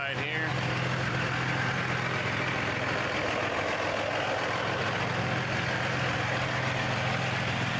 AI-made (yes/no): no